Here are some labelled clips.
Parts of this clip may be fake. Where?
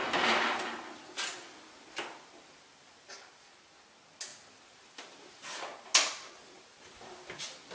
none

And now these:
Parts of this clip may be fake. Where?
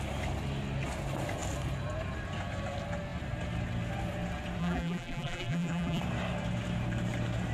4.6-6.0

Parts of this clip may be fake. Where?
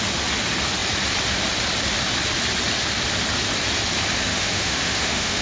4.3-5.4